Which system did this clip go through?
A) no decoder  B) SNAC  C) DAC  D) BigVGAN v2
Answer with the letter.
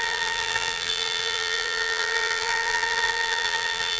D